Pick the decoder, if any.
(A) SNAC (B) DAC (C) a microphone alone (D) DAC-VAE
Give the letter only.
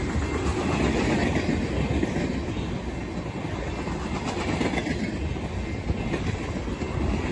C